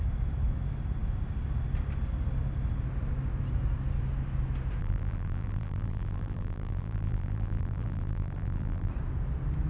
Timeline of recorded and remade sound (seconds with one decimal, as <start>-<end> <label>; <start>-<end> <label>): 0.0-4.8 recorded; 4.8-8.9 remade; 8.9-9.7 recorded